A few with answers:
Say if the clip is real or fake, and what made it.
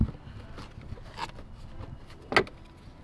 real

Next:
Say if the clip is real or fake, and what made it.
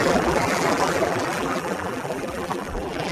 fake, vocoder, BigVGAN v2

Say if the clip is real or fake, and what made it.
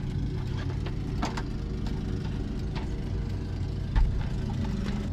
real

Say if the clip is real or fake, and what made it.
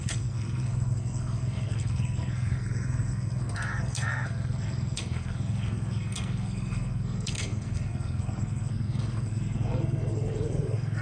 fake, codec, SNAC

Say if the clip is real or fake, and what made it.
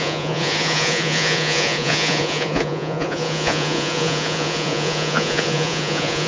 fake, vocoder, Vocos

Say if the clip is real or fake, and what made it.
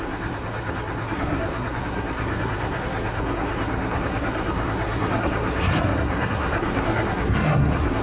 fake, codec, SNAC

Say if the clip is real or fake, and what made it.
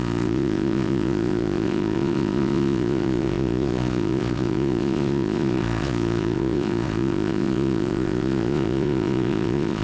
fake, vocoder, Vocos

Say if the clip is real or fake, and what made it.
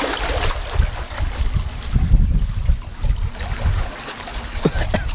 real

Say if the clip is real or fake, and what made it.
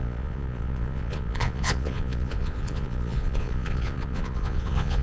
fake, vocoder, Vocos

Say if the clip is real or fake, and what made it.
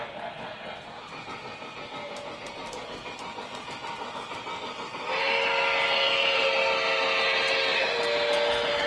real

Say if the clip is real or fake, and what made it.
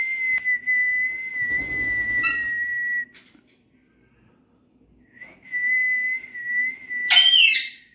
real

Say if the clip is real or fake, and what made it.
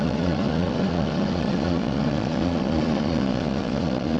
fake, vocoder, Vocos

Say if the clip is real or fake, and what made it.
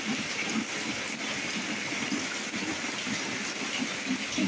real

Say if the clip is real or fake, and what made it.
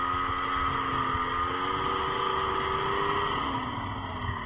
real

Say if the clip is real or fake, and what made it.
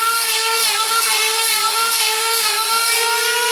fake, codec, SNAC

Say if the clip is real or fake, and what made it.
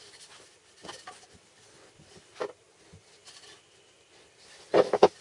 real